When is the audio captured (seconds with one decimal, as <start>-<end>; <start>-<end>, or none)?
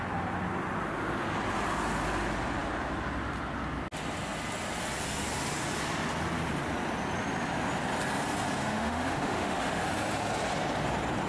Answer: 0.0-8.6; 9.8-11.3